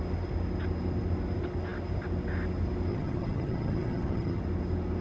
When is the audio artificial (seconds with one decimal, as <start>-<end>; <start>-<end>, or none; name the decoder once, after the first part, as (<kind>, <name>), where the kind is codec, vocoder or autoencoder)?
2.9-4.4 (vocoder, HiFi-GAN)